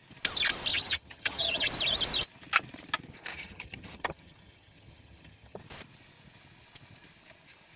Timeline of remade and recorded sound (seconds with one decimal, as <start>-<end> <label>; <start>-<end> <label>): 0.0-0.7 recorded; 0.7-1.7 remade; 1.7-3.3 recorded; 3.3-5.6 remade; 5.6-7.8 recorded